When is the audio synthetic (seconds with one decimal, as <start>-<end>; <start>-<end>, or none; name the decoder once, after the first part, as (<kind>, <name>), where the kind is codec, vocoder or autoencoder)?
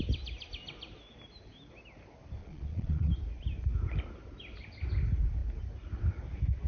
2.4-3.1 (vocoder, Vocos)